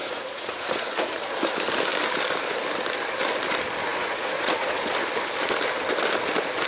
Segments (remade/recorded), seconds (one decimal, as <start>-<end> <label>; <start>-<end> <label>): 0.0-1.2 remade; 1.2-3.9 recorded; 3.9-4.9 remade; 4.9-6.7 recorded